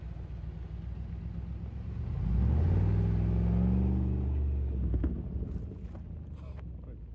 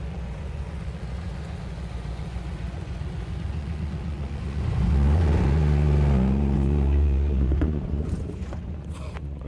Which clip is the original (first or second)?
first